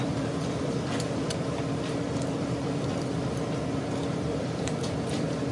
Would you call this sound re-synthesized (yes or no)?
yes